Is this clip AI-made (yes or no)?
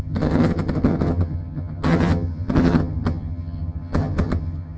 yes